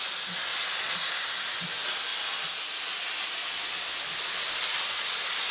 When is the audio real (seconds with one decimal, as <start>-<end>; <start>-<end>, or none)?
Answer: 0.0-5.5